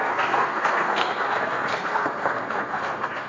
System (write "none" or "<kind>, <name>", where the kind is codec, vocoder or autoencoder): codec, SNAC